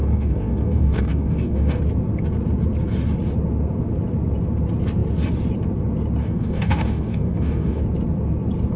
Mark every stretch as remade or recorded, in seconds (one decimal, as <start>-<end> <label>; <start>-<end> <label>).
0.0-1.8 remade; 1.8-6.2 recorded; 6.2-7.8 remade; 7.8-8.8 recorded